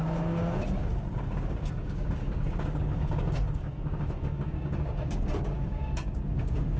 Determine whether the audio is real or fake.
fake